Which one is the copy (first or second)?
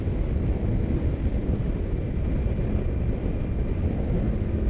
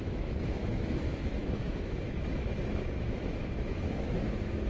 second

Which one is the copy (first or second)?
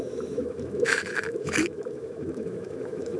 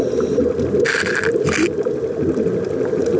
first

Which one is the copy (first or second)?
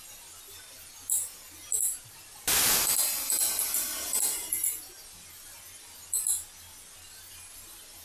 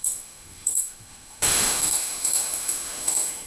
second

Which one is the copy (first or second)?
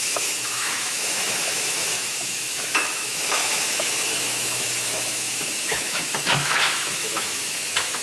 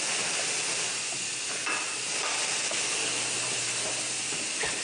first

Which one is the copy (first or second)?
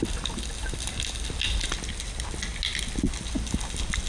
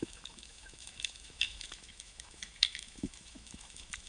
second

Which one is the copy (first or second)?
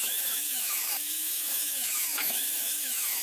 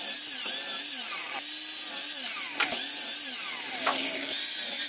first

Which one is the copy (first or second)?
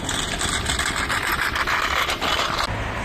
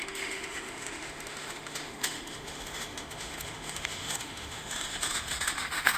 second